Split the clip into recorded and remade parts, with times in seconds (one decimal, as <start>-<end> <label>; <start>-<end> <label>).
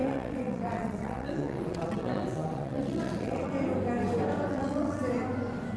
0.0-3.5 remade; 3.5-4.5 recorded; 4.5-5.0 remade; 5.0-5.8 recorded